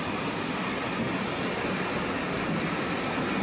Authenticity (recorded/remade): recorded